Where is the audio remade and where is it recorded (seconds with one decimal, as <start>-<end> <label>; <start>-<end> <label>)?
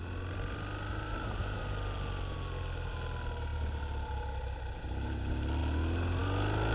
0.0-0.9 recorded; 0.9-1.6 remade; 1.6-6.7 recorded